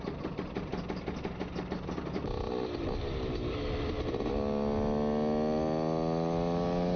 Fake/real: real